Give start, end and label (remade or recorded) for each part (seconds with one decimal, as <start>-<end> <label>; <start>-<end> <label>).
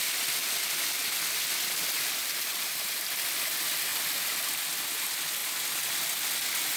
0.0-0.4 recorded; 0.4-1.0 remade; 1.0-2.2 recorded; 2.2-2.8 remade; 2.8-3.9 recorded; 3.9-4.7 remade; 4.7-6.8 recorded